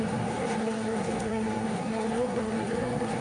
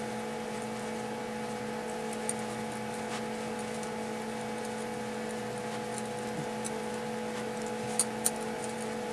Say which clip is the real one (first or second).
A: second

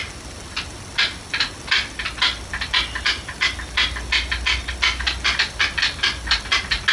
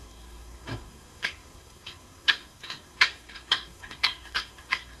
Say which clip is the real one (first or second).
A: first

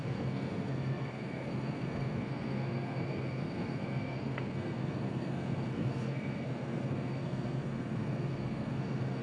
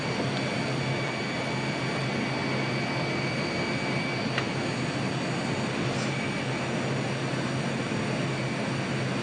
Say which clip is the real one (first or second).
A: second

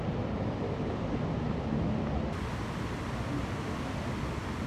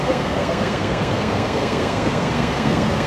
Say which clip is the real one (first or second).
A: first